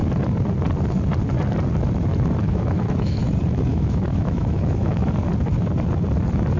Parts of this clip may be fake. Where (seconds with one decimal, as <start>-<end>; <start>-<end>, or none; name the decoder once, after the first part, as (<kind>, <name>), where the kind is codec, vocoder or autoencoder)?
2.4-3.2 (autoencoder, DAC-VAE); 3.7-5.0